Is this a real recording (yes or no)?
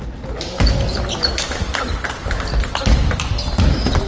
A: yes